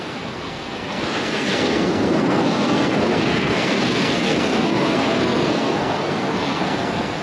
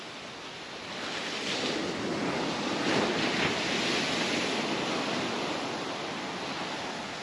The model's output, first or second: first